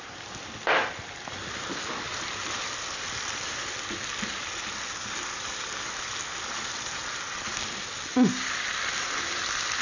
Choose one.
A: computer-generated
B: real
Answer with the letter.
A